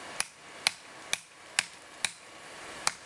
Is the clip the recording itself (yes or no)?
yes